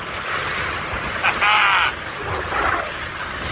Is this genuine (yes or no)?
yes